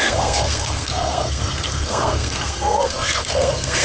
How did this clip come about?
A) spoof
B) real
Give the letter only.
A